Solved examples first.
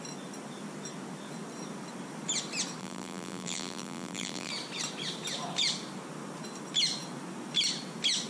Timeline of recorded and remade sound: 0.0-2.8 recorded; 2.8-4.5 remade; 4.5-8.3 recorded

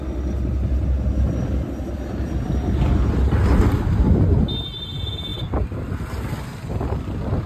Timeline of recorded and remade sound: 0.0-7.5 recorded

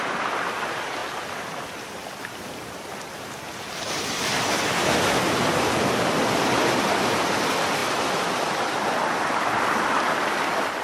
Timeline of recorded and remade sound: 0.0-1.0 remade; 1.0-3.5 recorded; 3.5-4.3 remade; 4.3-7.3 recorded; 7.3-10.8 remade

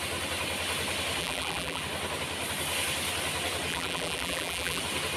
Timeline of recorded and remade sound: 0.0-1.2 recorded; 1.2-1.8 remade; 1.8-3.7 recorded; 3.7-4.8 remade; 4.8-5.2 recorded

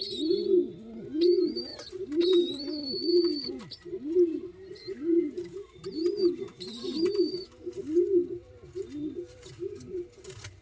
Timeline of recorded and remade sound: 0.0-1.7 recorded; 1.7-2.6 remade; 2.6-3.3 recorded; 3.3-7.3 remade; 7.3-10.6 recorded

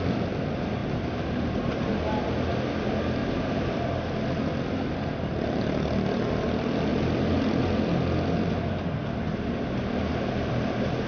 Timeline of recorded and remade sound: 0.0-0.8 recorded; 0.8-1.8 remade; 1.8-3.2 recorded; 3.2-3.8 remade; 3.8-11.1 recorded

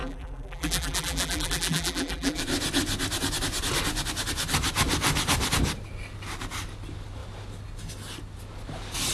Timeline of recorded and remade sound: 0.0-2.4 remade; 2.4-9.1 recorded

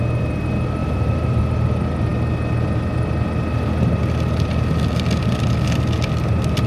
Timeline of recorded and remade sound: 0.0-0.8 recorded; 0.8-1.4 remade; 1.4-6.7 recorded